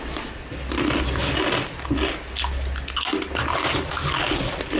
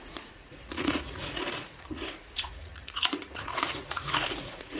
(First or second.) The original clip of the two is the first